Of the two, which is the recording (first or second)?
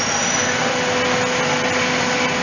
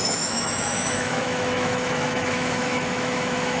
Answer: first